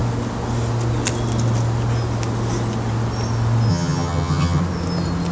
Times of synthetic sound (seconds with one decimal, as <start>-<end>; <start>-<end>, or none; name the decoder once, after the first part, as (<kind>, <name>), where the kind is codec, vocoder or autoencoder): 3.7-4.6 (vocoder, HiFi-GAN)

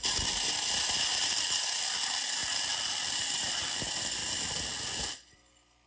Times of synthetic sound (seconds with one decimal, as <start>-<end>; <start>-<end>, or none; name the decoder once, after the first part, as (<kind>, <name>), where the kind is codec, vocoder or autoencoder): none

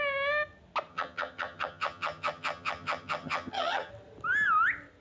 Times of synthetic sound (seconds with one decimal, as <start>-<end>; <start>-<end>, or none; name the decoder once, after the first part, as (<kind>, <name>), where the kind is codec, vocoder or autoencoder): 0.9-3.9 (vocoder, HiFi-GAN)